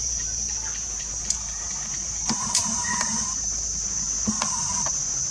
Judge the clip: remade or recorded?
remade